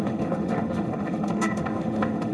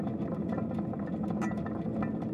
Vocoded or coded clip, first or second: first